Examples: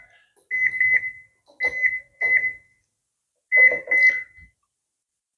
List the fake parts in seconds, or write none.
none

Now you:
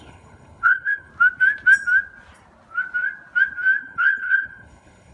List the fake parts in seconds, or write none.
0.0-1.1 (codec, HILCodec); 3.8-5.1